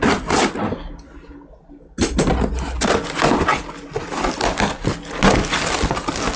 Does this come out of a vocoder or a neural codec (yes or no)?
no